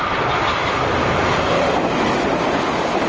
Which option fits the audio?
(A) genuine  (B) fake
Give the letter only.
B